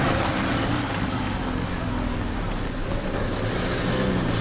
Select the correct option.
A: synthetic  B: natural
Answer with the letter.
B